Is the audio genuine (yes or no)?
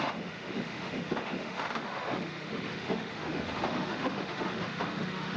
no